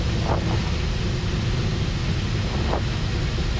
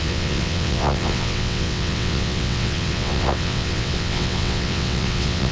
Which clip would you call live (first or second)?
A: first